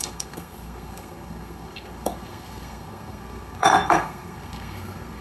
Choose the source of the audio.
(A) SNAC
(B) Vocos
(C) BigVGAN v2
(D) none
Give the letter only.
A